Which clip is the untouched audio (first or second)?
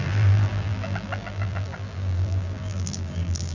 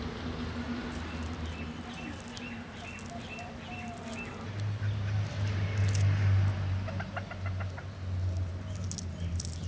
second